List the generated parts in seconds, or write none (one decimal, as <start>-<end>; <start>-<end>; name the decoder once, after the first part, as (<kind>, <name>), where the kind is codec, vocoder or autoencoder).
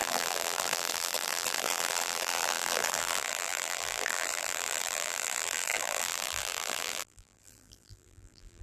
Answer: 0.0-8.6 (vocoder, BigVGAN v2)